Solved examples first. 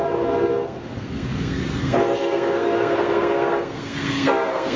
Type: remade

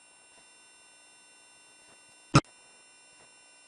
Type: recorded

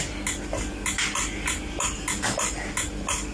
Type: recorded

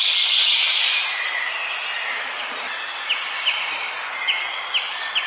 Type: recorded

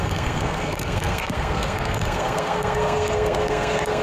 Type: remade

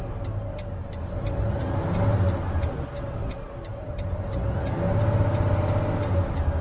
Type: recorded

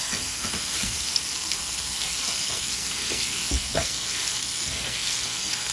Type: remade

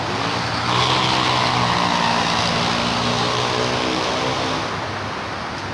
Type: recorded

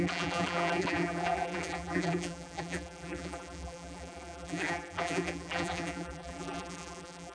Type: remade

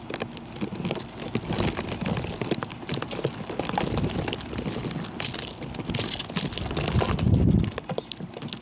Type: recorded